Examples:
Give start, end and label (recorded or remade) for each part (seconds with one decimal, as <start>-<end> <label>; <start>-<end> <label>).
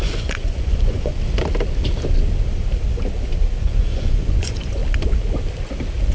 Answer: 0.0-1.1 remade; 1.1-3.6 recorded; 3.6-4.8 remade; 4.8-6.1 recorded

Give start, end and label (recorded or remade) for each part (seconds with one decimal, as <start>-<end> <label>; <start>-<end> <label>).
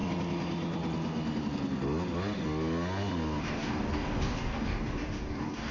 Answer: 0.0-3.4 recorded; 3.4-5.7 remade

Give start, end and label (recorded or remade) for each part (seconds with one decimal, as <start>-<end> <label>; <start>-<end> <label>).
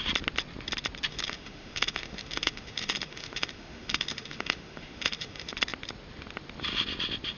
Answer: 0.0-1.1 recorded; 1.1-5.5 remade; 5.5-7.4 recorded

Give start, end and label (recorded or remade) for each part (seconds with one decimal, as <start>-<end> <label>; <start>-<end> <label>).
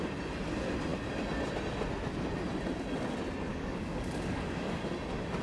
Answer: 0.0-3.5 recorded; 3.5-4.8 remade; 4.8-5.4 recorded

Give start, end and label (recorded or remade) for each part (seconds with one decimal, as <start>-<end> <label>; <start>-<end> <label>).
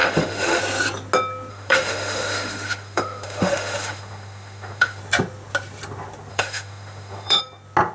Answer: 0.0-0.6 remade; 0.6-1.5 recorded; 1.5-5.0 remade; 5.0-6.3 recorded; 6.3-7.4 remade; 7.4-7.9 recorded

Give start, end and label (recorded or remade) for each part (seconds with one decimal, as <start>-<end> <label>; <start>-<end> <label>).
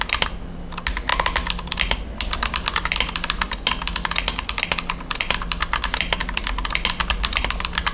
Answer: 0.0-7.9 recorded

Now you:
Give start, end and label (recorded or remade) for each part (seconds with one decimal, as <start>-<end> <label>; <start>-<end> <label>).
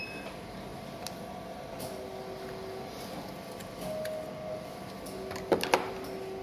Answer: 0.0-6.4 recorded